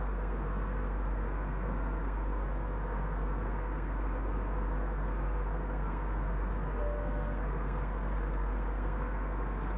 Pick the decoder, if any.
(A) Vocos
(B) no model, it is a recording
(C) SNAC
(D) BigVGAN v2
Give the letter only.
C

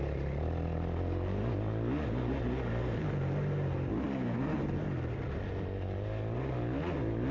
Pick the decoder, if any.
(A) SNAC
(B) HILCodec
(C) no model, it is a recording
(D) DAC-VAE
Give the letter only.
C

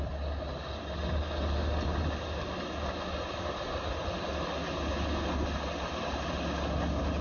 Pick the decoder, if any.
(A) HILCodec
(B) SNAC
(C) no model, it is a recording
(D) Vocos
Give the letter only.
C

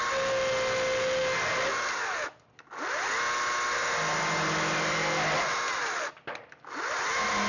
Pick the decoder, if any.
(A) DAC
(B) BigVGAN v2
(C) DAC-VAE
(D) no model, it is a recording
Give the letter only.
D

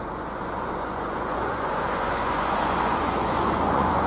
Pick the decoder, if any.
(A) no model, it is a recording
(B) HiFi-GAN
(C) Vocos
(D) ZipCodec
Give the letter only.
C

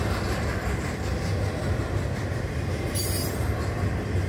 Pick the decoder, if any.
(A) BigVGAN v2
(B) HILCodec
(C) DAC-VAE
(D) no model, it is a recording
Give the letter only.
D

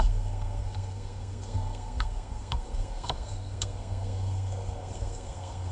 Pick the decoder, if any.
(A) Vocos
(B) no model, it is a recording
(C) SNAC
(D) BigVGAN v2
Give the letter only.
C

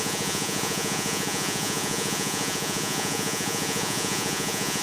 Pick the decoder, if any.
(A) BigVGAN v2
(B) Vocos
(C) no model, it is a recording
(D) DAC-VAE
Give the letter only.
B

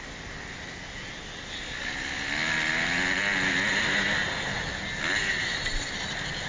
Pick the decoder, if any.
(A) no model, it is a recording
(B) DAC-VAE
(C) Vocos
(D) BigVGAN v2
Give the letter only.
A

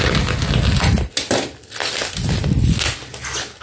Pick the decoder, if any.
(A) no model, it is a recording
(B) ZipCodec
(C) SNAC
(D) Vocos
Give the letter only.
A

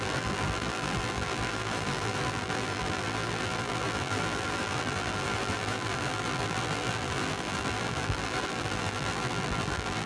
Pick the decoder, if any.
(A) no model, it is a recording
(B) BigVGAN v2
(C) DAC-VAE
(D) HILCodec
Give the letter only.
B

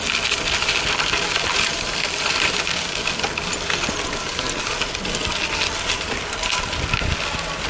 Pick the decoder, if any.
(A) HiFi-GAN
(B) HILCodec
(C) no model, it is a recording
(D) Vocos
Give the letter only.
C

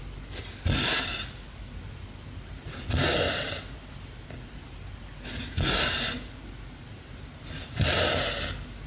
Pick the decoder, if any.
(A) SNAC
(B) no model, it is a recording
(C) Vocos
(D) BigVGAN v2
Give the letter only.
B